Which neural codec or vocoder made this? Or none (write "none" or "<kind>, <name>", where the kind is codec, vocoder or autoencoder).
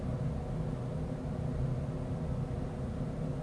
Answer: none